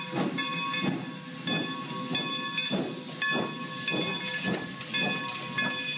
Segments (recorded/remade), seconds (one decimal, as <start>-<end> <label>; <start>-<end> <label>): 0.0-6.0 recorded

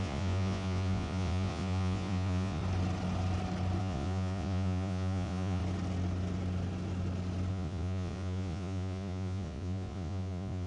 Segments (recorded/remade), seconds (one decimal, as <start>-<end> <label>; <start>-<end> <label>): 0.0-2.6 remade; 2.6-3.8 recorded; 3.8-5.6 remade; 5.6-7.5 recorded; 7.5-10.7 remade

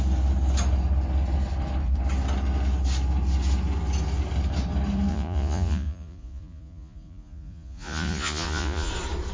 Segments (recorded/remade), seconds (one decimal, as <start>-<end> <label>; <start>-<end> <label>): 0.0-5.1 recorded; 5.1-8.9 remade; 8.9-9.3 recorded

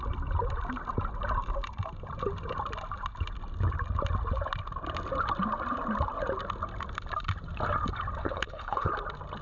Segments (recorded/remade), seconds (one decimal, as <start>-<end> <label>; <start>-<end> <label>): 0.0-8.2 recorded; 8.2-8.9 remade; 8.9-9.4 recorded

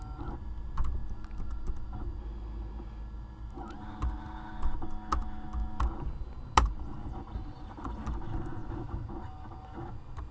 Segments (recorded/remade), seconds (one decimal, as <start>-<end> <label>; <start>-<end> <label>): 0.0-10.3 recorded